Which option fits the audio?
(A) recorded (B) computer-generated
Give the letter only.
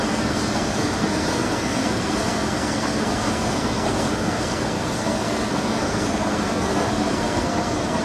B